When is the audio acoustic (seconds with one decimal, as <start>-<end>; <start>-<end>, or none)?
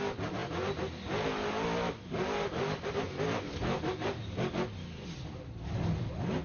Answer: 0.0-6.4